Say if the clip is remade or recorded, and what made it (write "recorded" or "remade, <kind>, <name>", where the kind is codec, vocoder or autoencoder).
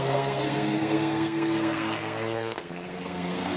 remade, codec, SNAC